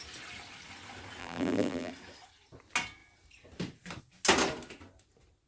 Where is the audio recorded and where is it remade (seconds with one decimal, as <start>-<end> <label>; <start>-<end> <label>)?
0.0-1.2 recorded; 1.2-1.9 remade; 1.9-5.5 recorded